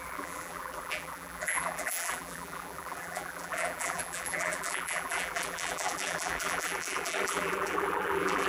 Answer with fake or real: fake